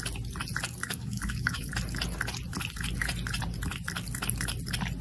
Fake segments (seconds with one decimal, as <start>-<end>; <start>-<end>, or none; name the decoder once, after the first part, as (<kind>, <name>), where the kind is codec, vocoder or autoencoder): 0.8-1.7 (codec, DAC)